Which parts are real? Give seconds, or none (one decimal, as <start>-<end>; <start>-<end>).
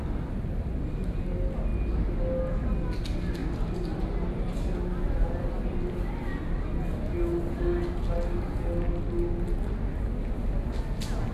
0.0-11.3